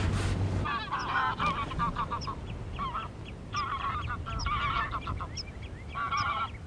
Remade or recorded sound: recorded